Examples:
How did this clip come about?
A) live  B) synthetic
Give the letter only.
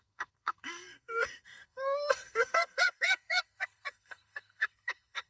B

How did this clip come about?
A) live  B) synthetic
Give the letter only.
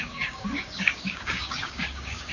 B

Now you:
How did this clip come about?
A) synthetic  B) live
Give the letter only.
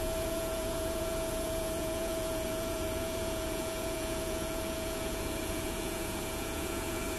A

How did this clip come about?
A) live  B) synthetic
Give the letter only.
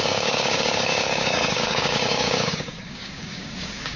B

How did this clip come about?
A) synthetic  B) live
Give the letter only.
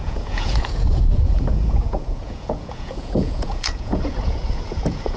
A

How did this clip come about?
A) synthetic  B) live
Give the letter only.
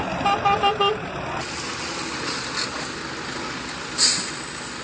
B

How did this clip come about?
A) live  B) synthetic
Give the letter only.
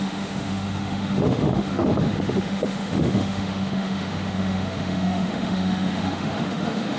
B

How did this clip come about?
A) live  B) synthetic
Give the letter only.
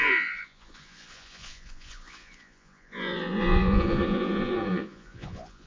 B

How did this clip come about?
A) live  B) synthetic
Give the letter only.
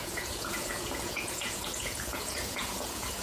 B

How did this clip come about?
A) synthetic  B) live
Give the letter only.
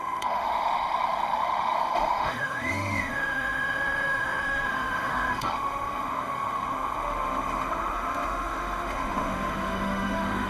A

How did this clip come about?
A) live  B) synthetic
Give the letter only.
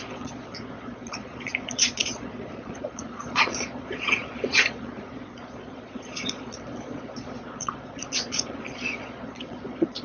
B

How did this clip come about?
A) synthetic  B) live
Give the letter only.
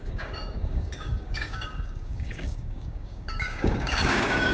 A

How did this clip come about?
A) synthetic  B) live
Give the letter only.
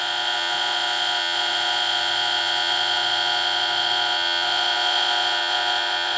A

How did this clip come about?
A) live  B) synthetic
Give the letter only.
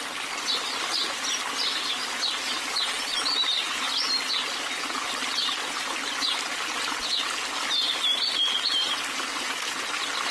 A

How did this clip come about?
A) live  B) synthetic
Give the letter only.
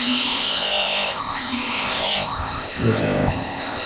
B